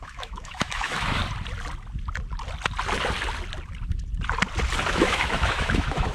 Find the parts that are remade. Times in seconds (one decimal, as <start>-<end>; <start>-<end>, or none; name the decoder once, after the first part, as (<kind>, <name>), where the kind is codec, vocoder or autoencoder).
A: 0.0-1.2 (autoencoder, DAC-VAE); 4.9-6.1